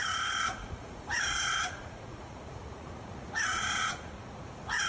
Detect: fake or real fake